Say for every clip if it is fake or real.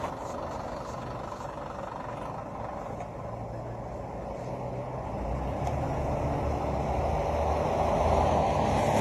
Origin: real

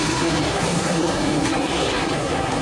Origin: fake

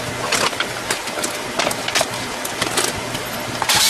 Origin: real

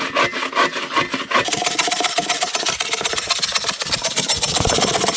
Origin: real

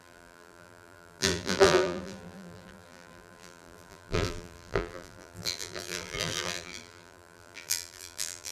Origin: fake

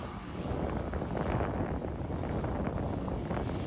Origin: real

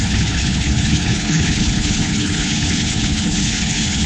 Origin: fake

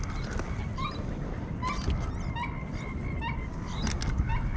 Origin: real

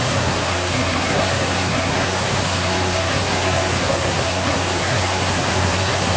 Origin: fake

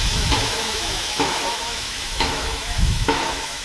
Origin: fake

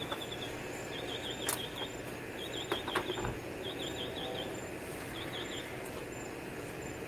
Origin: real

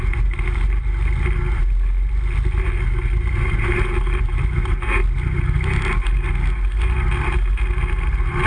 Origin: real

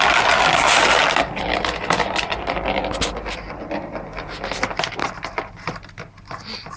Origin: real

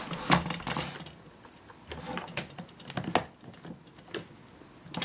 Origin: real